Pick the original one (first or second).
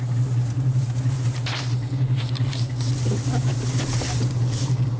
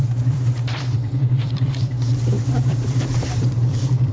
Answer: first